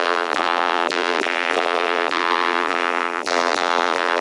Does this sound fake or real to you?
fake